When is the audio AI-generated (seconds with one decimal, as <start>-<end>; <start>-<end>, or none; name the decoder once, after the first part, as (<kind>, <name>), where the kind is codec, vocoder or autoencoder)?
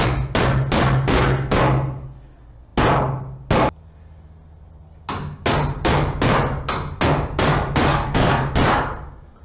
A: 7.9-8.4 (codec, SNAC)